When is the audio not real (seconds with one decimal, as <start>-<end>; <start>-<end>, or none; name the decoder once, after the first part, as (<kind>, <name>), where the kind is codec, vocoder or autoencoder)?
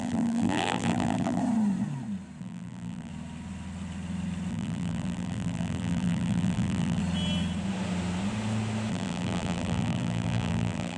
0.0-1.4 (vocoder, BigVGAN v2); 2.4-3.1; 4.5-7.0; 8.9-11.0